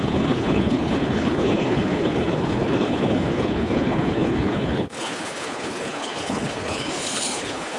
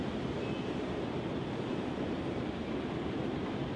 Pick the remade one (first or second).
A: first